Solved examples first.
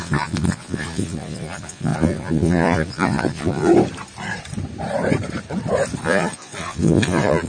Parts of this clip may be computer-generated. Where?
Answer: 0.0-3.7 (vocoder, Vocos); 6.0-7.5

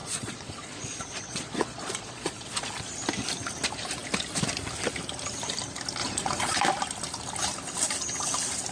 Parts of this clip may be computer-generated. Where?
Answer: 0.0-2.7 (vocoder, Vocos); 6.0-6.6

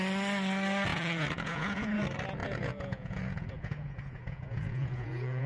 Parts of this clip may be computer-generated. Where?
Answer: 0.9-2.0 (vocoder, Vocos); 2.4-5.5

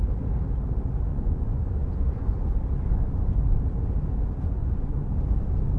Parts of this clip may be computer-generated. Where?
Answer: 1.1-2.3 (vocoder, Vocos); 4.6-5.1

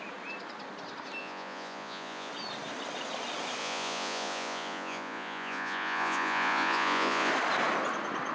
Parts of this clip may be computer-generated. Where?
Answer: 1.2-2.3 (vocoder, Vocos); 3.6-7.3

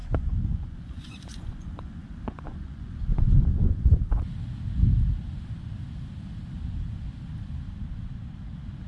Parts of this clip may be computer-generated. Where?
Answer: 0.0-4.0 (vocoder, Vocos)